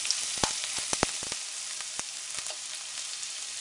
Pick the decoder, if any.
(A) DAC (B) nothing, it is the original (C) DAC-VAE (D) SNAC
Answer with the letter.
B